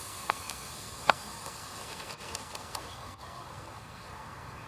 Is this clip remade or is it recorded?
remade